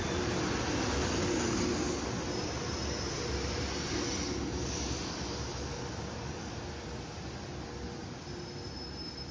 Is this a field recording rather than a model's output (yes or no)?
yes